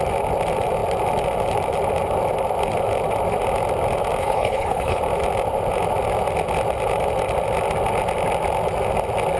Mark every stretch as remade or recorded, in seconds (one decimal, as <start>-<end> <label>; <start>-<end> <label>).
0.0-4.2 recorded; 4.2-5.0 remade; 5.0-9.4 recorded